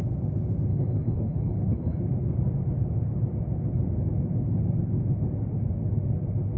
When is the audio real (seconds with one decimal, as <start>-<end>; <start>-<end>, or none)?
0.0-0.7; 2.0-6.6